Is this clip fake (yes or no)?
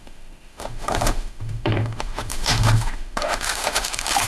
yes